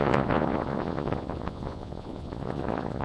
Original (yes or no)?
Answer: no